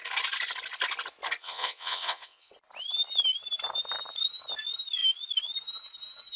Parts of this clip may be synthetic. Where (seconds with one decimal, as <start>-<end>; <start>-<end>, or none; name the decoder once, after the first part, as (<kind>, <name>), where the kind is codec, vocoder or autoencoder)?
1.4-2.5 (vocoder, WaveNeXt)

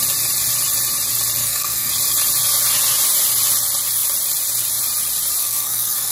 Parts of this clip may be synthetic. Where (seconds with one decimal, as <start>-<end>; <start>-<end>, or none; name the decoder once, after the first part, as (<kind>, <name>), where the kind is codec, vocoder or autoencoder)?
1.4-1.9 (codec, SNAC); 5.4-6.1